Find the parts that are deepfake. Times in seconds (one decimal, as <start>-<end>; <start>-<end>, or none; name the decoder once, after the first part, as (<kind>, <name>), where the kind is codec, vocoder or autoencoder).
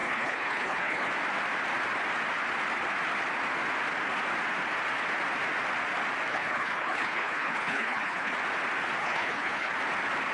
0.0-1.1 (codec, HILCodec); 6.3-8.3; 9.0-9.7